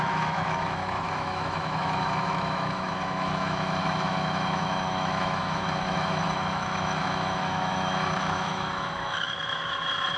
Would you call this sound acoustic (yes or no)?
no